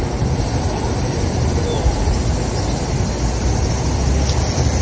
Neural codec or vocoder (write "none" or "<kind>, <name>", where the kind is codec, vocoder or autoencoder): none